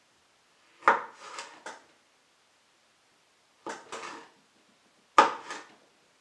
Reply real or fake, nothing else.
real